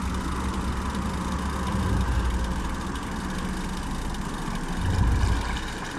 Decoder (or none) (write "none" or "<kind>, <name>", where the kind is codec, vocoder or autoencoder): none